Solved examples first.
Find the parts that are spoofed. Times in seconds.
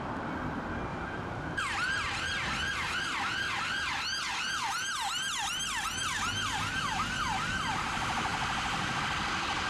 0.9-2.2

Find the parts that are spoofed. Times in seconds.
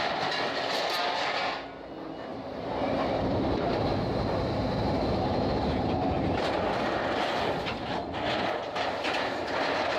2.3-6.5